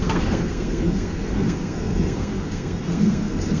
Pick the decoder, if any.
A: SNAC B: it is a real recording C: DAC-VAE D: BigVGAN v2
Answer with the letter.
A